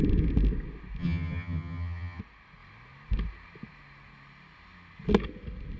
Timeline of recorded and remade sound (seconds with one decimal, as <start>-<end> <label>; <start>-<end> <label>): 0.0-1.0 recorded; 1.0-2.2 remade; 2.2-5.8 recorded

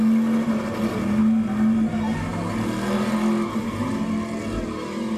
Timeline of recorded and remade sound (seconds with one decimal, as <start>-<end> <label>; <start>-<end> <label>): 0.0-5.2 recorded

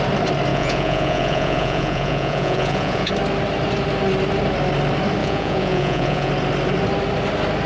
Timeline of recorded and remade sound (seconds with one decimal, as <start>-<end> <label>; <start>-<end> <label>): 0.0-0.5 recorded; 0.5-3.1 remade; 3.1-5.2 recorded; 5.2-6.3 remade; 6.3-7.7 recorded

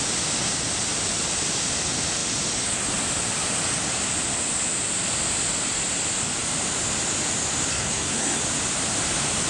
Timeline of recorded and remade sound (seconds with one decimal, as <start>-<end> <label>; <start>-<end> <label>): 0.0-7.7 recorded; 7.7-8.4 remade; 8.4-9.5 recorded

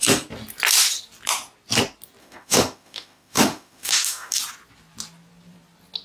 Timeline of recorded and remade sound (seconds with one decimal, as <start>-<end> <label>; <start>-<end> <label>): 0.0-2.2 recorded; 2.2-4.4 remade; 4.4-6.0 recorded